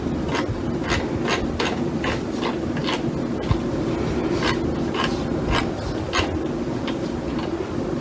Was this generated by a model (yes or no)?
no